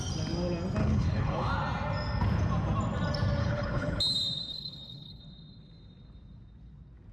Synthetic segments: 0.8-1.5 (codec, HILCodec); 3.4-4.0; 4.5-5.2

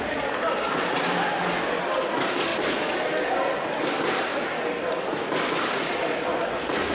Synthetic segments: none

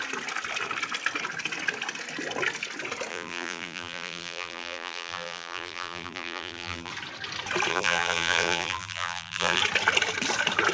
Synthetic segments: 3.1-6.9 (vocoder, BigVGAN v2); 7.7-9.6

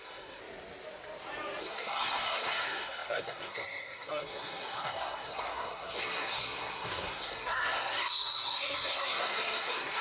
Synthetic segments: 0.0-0.4 (codec, SNAC); 1.6-10.0

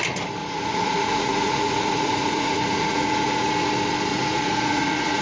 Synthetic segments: 0.4-3.5 (vocoder, Vocos); 4.1-5.2

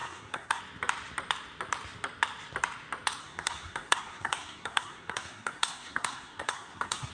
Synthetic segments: 0.0-0.6 (codec, SNAC); 3.2-7.1